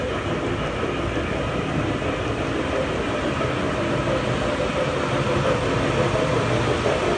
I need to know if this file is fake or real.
real